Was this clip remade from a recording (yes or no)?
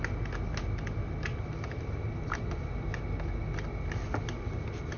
no